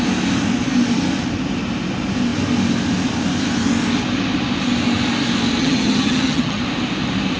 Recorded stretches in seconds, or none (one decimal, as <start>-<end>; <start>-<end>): 0.0-5.6; 6.6-7.4

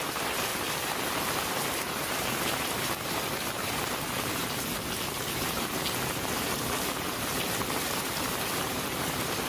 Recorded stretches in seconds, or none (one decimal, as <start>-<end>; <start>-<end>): 7.3-7.8

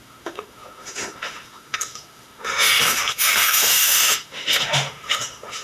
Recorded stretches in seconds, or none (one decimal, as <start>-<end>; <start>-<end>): none

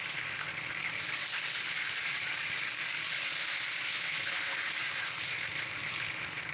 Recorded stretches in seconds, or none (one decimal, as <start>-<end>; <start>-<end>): 0.0-0.8; 3.3-4.6; 5.4-6.5

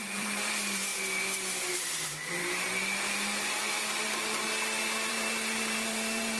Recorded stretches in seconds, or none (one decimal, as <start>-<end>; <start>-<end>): 0.9-1.7; 2.4-5.1